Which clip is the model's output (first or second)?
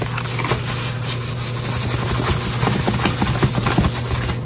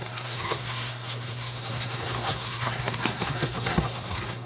second